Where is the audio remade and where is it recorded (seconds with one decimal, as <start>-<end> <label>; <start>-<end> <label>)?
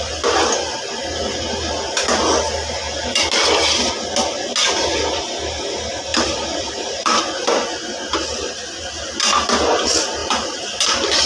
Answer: 0.0-6.1 recorded; 6.1-7.2 remade; 7.2-10.2 recorded; 10.2-11.3 remade